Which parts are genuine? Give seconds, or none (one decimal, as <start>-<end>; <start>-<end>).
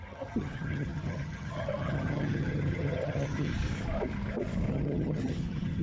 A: 3.5-4.7